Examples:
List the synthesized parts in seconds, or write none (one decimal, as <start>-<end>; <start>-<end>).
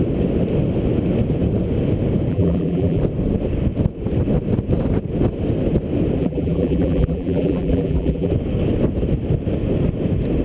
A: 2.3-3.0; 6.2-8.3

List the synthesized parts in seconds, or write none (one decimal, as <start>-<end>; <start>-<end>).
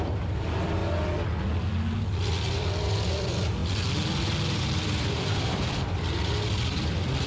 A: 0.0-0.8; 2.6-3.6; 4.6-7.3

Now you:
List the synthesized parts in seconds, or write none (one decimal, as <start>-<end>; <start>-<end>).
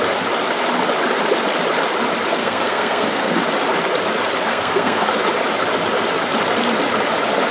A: 2.4-3.4; 4.5-5.1